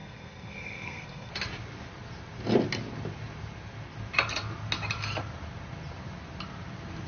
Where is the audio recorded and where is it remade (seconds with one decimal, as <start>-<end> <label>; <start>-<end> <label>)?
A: 0.0-1.3 remade; 1.3-7.1 recorded